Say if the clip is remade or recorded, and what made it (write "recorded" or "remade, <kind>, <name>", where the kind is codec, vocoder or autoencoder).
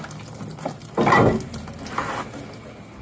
recorded